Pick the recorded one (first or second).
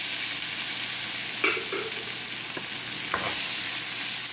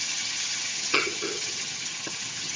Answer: first